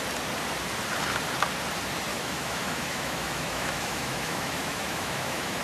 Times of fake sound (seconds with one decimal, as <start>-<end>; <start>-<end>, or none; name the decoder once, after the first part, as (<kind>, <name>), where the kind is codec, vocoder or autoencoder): 2.1-5.6 (autoencoder, DAC-VAE)